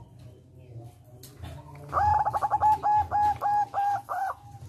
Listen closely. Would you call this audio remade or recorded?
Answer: recorded